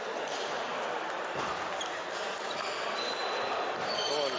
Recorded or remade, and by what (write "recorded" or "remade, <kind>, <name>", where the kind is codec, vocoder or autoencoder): recorded